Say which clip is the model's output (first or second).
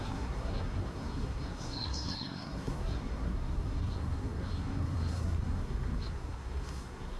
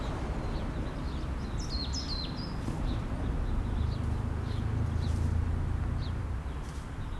first